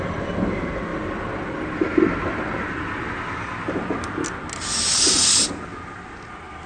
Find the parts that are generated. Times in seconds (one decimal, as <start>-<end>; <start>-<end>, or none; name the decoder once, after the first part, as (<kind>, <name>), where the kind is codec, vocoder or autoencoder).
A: none